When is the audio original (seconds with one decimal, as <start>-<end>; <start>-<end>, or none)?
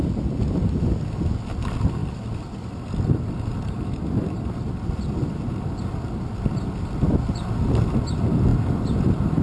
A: 0.0-2.0; 5.3-8.5